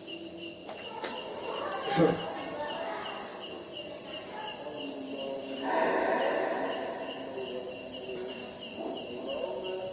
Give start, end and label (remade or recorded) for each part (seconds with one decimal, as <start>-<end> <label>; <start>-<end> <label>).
0.0-0.6 recorded; 0.6-1.7 remade; 1.7-9.9 recorded